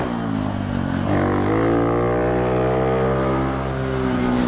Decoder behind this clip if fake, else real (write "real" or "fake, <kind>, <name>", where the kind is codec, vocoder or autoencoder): real